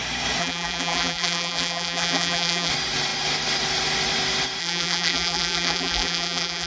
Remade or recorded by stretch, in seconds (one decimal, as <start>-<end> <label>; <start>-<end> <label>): 0.0-0.4 recorded; 0.4-2.7 remade; 2.7-4.6 recorded; 4.6-6.7 remade